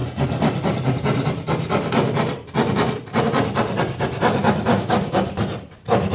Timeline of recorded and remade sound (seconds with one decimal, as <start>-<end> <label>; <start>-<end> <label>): 0.0-4.7 recorded; 4.7-5.3 remade; 5.3-6.1 recorded